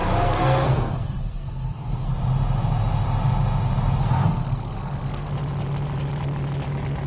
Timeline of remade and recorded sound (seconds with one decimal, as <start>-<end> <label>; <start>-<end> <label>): 0.0-2.1 remade; 2.1-4.0 recorded; 4.0-5.3 remade; 5.3-7.1 recorded